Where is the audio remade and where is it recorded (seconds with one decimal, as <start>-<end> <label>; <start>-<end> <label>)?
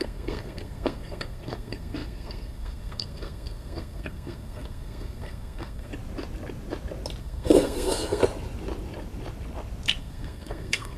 0.0-5.9 remade; 5.9-7.2 recorded; 7.2-8.2 remade; 8.2-10.0 recorded; 10.0-11.0 remade